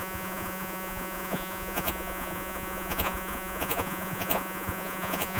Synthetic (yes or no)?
yes